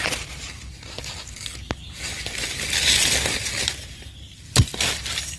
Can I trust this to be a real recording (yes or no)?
yes